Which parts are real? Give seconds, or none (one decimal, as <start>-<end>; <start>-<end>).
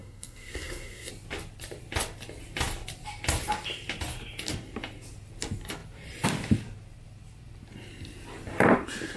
1.1-9.2